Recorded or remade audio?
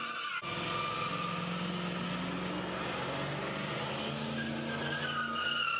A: recorded